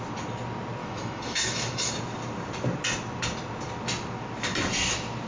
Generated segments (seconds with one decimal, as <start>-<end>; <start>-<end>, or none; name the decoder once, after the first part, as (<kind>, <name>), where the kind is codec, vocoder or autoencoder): 0.8-1.9 (autoencoder, DAC-VAE)

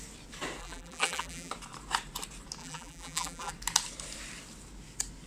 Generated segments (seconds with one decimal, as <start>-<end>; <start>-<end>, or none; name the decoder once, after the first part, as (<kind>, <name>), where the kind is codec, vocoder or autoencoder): 0.6-1.5 (vocoder, BigVGAN v2); 2.6-3.5

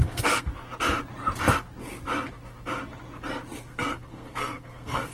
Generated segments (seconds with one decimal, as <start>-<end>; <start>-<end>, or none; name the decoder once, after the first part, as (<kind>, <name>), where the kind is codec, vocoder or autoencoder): 0.0-0.5 (codec, SNAC); 3.6-5.1

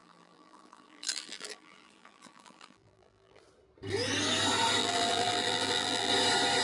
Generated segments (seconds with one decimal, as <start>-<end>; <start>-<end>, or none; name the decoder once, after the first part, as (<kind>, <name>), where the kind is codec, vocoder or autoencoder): 0.0-3.4 (vocoder, BigVGAN v2); 4.8-6.1

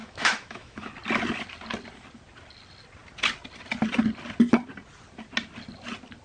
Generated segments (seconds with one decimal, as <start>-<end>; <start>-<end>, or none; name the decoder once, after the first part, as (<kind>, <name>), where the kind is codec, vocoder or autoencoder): 0.0-0.9 (autoencoder, DAC-VAE)

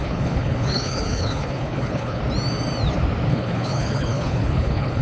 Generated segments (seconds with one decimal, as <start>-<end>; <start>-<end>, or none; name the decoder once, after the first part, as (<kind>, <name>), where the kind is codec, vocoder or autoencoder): 0.0-2.2 (codec, HILCodec); 3.3-5.0

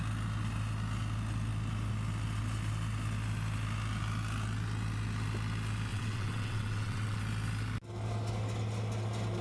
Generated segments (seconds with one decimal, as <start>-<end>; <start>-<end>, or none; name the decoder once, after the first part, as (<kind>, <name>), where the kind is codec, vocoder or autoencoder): 5.9-7.2 (vocoder, WaveNeXt)

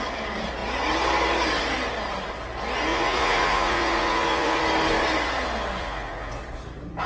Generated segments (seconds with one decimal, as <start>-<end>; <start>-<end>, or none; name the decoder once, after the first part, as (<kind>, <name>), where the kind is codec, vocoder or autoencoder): 2.9-4.6 (vocoder, Vocos); 5.8-6.4